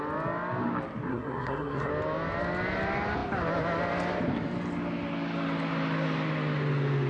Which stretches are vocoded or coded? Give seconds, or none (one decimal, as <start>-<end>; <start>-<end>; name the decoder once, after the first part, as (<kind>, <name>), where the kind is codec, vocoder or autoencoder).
1.1-1.9 (codec, SNAC)